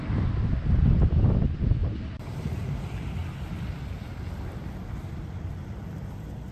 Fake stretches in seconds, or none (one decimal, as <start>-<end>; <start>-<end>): 0.0-1.8; 2.3-3.2; 4.1-6.5